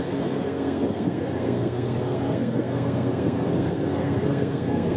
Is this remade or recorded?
remade